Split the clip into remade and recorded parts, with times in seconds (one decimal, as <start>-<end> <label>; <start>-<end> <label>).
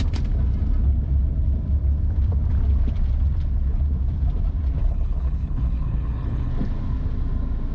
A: 0.0-4.8 recorded; 4.8-6.5 remade; 6.5-7.7 recorded